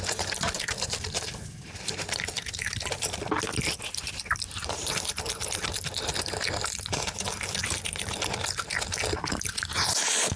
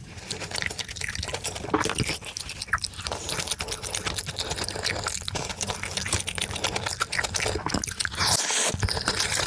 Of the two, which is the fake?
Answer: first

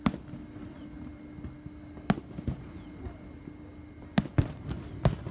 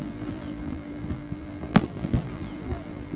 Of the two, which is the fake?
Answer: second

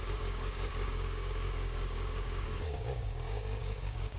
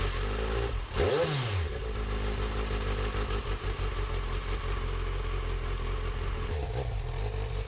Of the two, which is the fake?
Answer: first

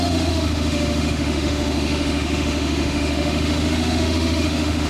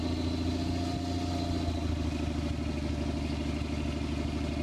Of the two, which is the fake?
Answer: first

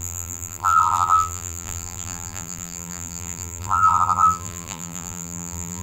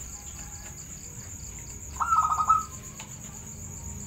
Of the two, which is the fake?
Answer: first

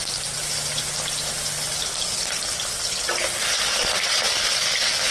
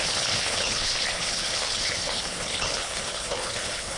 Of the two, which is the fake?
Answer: second